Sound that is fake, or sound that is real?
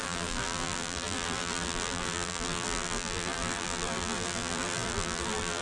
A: fake